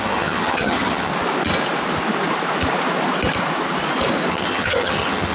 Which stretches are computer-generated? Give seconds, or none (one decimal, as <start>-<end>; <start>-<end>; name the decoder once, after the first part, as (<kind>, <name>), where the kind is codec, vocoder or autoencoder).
0.0-1.1 (vocoder, HiFi-GAN); 4.3-5.3